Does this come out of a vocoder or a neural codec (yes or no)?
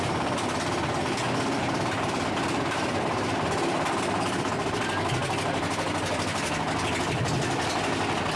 no